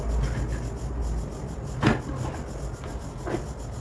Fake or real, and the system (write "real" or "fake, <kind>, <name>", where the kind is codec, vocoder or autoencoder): real